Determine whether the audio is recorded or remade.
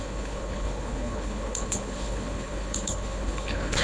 remade